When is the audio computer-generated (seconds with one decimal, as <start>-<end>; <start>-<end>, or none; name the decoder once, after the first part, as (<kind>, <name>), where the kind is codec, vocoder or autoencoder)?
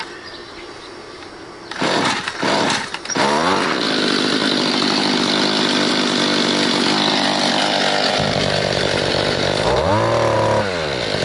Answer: 0.4-3.2 (vocoder, BigVGAN v2); 8.1-9.9